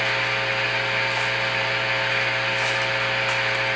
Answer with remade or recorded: recorded